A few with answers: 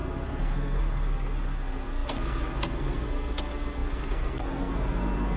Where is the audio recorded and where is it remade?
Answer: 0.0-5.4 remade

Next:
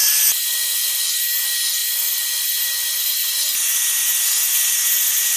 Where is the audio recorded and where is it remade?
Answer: 0.0-1.0 remade; 1.0-1.8 recorded; 1.8-3.6 remade; 3.6-4.0 recorded; 4.0-5.4 remade

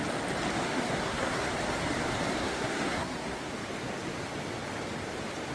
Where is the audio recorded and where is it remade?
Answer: 0.0-0.6 recorded; 0.6-1.5 remade; 1.5-2.4 recorded; 2.4-3.5 remade; 3.5-5.5 recorded

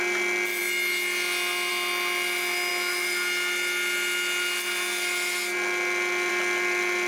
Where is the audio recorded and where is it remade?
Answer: 0.0-7.1 recorded

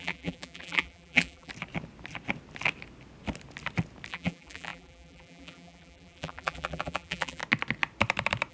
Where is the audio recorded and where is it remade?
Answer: 0.0-1.5 remade; 1.5-4.1 recorded; 4.1-7.4 remade; 7.4-8.5 recorded